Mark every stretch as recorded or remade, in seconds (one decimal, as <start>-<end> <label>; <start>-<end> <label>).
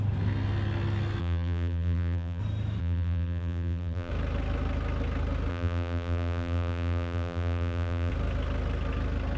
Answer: 0.0-1.2 recorded; 1.2-2.4 remade; 2.4-2.8 recorded; 2.8-4.1 remade; 4.1-5.5 recorded; 5.5-8.1 remade; 8.1-9.4 recorded